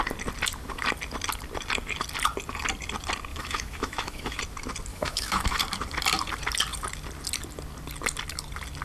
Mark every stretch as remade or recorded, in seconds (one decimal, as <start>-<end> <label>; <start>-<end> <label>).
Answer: 0.0-3.3 recorded; 3.3-4.4 remade; 4.4-4.9 recorded; 4.9-5.6 remade; 5.6-8.8 recorded